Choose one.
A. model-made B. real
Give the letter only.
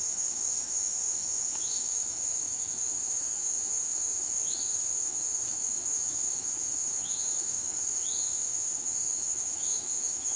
A